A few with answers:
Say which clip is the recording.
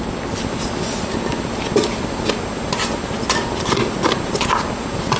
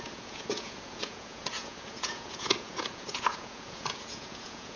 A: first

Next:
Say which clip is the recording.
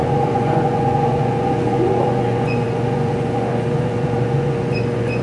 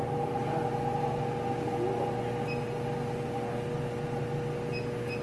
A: second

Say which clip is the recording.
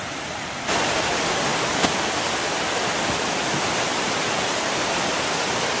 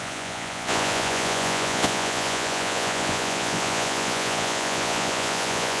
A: first